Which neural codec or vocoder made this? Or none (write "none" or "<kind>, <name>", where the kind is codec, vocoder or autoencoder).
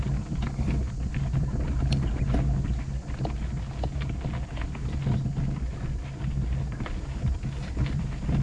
none